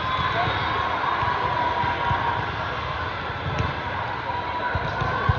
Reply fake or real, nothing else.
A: real